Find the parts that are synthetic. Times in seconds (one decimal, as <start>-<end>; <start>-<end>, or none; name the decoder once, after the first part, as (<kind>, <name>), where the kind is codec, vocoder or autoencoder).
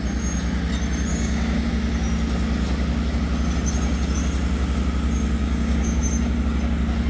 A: 1.1-1.7 (codec, DAC); 5.4-6.0